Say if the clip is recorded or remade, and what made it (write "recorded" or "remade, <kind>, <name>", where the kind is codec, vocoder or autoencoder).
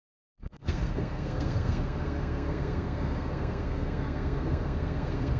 remade, codec, SNAC